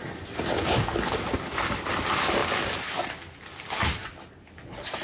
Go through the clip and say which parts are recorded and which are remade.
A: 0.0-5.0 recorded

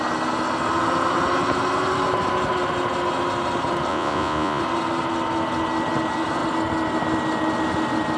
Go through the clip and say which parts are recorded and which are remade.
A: 0.0-3.9 recorded; 3.9-4.6 remade; 4.6-8.2 recorded

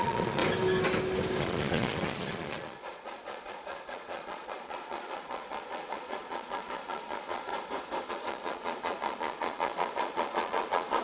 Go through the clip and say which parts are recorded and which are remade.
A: 0.0-0.4 remade; 0.4-1.4 recorded; 1.4-7.5 remade; 7.5-8.1 recorded; 8.1-11.0 remade

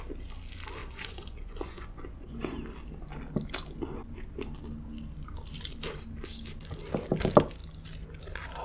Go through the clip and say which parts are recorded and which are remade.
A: 0.0-0.8 recorded; 0.8-2.4 remade; 2.4-8.6 recorded

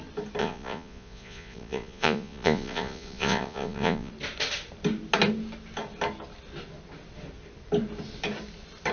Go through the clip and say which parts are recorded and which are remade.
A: 0.0-0.4 recorded; 0.4-4.1 remade; 4.1-8.9 recorded

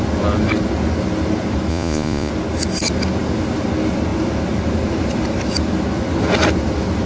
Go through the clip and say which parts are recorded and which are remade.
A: 0.0-1.7 recorded; 1.7-2.3 remade; 2.3-7.1 recorded

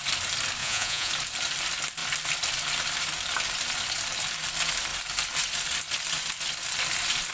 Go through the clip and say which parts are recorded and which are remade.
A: 0.0-0.6 recorded; 0.6-1.1 remade; 1.1-7.3 recorded